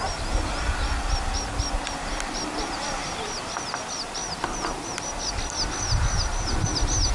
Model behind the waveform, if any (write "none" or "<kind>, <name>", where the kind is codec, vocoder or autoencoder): none